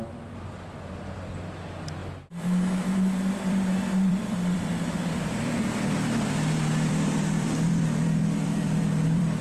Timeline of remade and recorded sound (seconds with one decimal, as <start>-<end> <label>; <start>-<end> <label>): 0.0-2.0 remade; 2.0-3.3 recorded; 3.3-9.4 remade